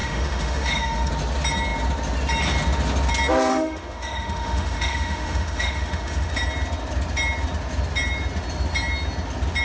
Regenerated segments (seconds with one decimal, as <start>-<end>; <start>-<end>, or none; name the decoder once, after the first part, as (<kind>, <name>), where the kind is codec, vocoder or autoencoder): 0.0-1.1 (autoencoder, DAC-VAE); 3.5-6.3